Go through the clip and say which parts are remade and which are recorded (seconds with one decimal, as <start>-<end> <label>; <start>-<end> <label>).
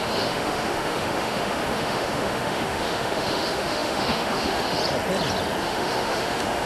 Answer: 0.0-4.8 remade; 4.8-5.6 recorded; 5.6-6.7 remade